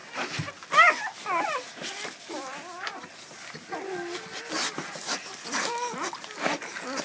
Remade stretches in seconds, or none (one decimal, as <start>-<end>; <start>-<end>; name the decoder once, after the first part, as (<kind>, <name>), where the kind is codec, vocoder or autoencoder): none